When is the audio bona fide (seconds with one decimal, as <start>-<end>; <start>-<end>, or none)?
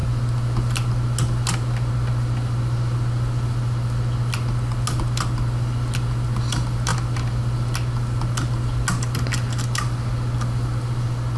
0.0-11.4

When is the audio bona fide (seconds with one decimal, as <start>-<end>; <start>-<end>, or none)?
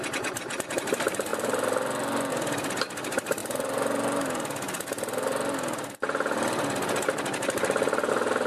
1.3-2.3; 3.4-8.1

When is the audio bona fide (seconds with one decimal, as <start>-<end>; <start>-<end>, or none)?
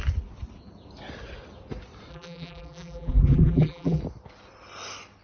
0.0-2.1; 4.0-5.2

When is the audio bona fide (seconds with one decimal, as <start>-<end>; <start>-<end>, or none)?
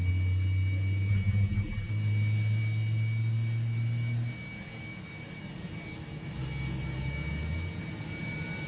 0.0-1.1; 1.9-8.7